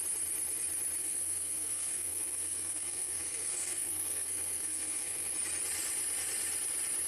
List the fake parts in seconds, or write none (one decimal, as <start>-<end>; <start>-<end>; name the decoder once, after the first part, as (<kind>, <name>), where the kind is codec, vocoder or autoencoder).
1.0-5.3 (codec, SNAC)